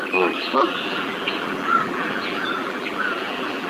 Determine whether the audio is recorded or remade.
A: remade